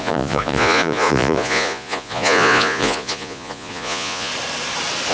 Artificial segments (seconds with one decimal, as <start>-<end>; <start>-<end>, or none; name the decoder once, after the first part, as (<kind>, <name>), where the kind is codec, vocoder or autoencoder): 0.0-4.3 (vocoder, Vocos)